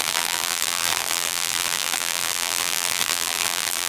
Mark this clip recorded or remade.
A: remade